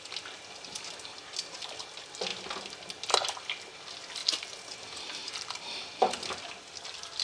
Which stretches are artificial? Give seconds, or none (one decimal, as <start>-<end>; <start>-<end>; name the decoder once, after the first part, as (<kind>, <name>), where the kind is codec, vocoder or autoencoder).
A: none